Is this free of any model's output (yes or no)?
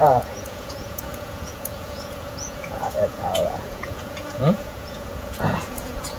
no